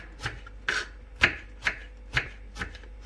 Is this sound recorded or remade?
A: recorded